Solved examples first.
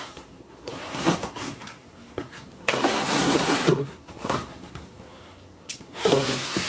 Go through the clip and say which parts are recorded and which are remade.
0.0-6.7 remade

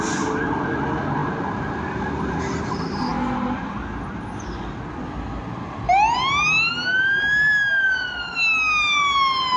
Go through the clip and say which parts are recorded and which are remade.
0.0-9.6 recorded

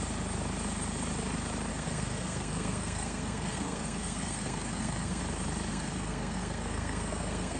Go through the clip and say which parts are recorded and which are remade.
0.0-1.7 recorded; 1.7-5.2 remade; 5.2-5.7 recorded; 5.7-7.6 remade

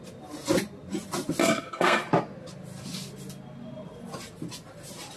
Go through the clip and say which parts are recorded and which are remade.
0.0-1.4 recorded; 1.4-2.0 remade; 2.0-5.2 recorded

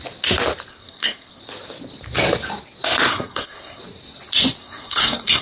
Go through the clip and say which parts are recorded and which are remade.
0.0-0.7 recorded; 0.7-1.4 remade; 1.4-3.1 recorded; 3.1-3.8 remade; 3.8-4.6 recorded; 4.6-5.4 remade

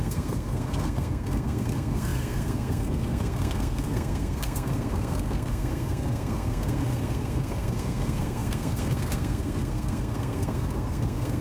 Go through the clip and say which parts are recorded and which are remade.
0.0-11.4 remade